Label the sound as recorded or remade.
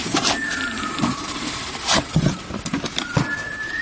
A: remade